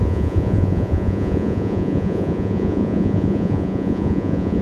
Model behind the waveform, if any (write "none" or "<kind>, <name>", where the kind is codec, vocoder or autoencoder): vocoder, Vocos